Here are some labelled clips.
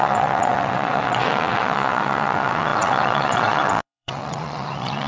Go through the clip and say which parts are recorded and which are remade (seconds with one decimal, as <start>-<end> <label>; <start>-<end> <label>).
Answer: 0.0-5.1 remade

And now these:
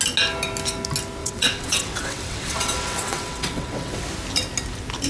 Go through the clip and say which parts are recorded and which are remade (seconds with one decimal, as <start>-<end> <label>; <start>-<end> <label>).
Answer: 0.0-1.2 recorded; 1.2-4.0 remade; 4.0-5.1 recorded

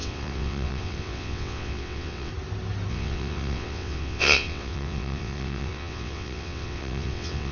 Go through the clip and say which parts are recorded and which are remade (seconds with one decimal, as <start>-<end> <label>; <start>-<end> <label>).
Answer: 0.0-2.3 remade; 2.3-2.9 recorded; 2.9-7.5 remade

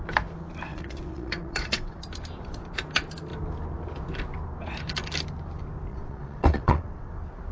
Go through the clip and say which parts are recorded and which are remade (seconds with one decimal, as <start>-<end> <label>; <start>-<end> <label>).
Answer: 0.0-0.7 recorded; 0.7-2.0 remade; 2.0-5.9 recorded; 5.9-7.1 remade; 7.1-7.5 recorded